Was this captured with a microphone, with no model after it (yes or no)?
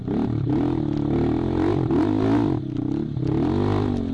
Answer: yes